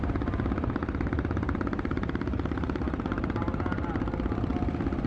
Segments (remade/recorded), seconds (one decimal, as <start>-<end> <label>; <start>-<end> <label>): 0.0-0.8 recorded; 0.8-3.9 remade; 3.9-5.1 recorded